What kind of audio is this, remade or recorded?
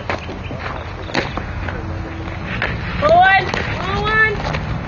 recorded